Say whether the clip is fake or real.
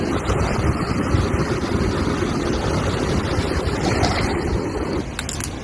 real